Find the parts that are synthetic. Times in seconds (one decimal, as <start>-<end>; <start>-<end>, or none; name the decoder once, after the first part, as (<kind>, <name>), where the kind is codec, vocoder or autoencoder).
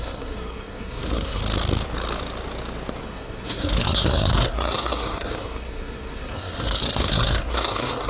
0.0-1.4 (codec, SNAC); 3.0-8.1